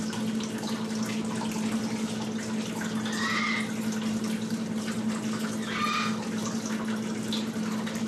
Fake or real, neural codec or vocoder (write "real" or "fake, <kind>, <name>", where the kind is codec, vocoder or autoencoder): real